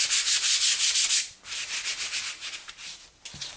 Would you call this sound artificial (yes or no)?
no